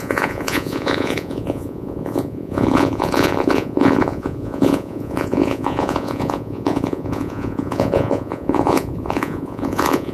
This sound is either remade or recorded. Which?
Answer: remade